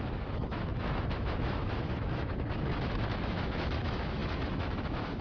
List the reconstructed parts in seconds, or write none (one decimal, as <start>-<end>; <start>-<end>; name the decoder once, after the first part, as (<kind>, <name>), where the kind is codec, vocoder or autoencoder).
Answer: 0.0-5.2 (autoencoder, DAC-VAE)